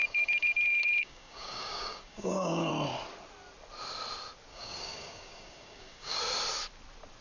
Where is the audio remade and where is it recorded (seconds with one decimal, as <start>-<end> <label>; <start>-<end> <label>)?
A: 0.0-2.7 remade; 2.7-4.5 recorded; 4.5-6.2 remade; 6.2-7.2 recorded